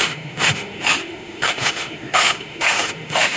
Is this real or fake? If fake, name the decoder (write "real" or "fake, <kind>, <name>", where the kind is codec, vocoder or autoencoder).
fake, autoencoder, DAC-VAE